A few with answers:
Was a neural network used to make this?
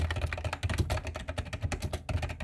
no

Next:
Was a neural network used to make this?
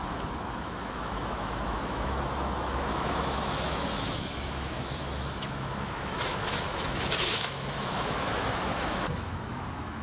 yes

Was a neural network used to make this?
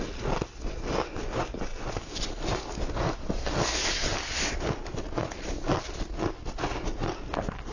no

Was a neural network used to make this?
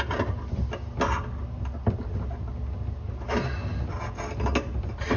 no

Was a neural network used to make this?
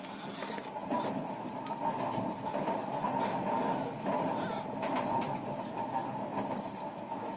no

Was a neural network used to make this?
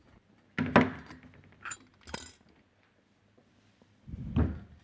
no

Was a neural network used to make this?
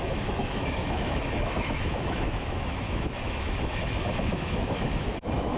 yes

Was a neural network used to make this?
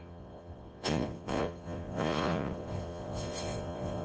yes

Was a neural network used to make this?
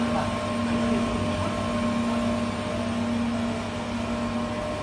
no